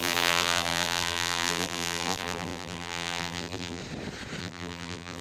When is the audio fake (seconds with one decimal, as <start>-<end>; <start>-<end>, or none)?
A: 0.0-3.8; 4.4-5.2